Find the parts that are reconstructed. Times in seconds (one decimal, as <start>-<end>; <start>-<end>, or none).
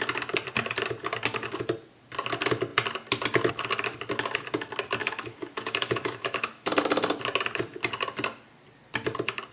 5.0-6.7